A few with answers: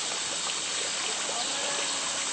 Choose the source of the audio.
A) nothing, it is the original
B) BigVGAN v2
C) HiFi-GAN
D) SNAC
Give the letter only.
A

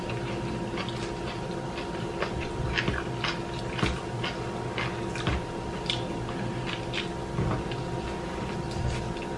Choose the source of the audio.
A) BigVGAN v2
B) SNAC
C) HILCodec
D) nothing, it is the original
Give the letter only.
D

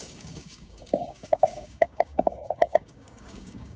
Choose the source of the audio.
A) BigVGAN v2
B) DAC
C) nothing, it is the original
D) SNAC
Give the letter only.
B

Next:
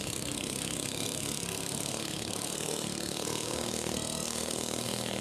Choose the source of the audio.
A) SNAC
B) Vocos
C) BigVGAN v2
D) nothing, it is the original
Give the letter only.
A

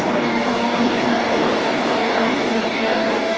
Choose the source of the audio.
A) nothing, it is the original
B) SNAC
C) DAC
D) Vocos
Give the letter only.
C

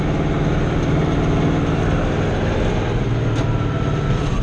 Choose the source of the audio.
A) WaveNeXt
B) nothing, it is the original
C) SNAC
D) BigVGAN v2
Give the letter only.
B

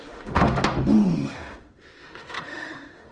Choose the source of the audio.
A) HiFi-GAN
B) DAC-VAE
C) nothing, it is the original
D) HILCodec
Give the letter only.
B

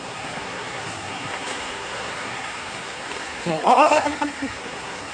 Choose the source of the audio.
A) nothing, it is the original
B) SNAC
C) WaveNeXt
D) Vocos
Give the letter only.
B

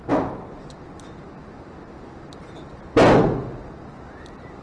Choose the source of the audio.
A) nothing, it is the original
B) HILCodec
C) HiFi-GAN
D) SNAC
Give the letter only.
A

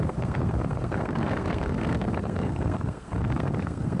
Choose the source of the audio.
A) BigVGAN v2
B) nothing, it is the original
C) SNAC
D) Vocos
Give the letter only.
C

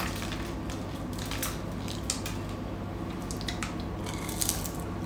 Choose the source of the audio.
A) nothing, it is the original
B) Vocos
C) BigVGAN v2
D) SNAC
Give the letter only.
A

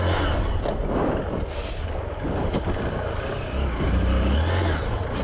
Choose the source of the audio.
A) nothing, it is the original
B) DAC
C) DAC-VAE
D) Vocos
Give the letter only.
A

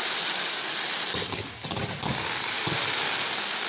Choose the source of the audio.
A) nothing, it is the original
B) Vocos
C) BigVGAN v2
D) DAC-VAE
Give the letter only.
A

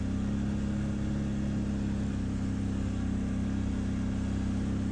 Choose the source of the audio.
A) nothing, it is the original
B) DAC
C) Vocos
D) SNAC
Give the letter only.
A